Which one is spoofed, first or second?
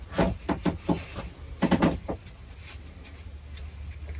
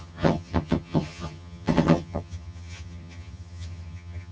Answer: second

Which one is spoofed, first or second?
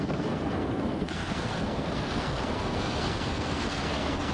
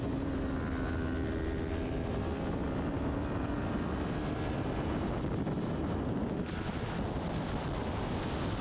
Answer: first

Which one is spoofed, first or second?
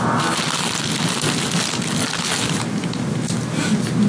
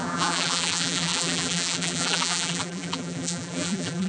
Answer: second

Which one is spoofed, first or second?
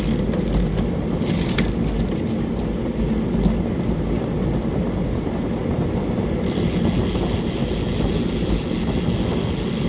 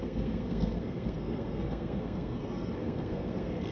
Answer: second